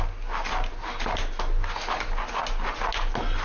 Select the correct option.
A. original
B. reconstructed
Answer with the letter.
A